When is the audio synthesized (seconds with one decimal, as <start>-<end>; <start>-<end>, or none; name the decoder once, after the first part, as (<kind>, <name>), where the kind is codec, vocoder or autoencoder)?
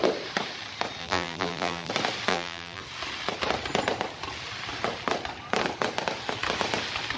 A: 1.0-1.9 (vocoder, BigVGAN v2); 2.3-2.8